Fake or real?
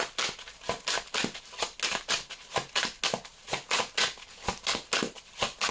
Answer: real